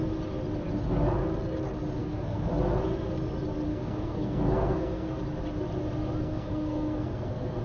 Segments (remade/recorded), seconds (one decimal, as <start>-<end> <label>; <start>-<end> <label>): 0.0-2.0 recorded; 2.0-2.5 remade; 2.5-3.7 recorded; 3.7-5.2 remade; 5.2-6.2 recorded; 6.2-7.6 remade